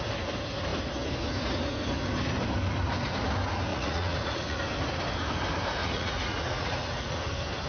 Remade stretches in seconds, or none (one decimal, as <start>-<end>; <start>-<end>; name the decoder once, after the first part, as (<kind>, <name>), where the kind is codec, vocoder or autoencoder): 3.7-4.6 (vocoder, Vocos); 5.8-7.2